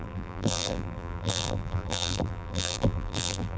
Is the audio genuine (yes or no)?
no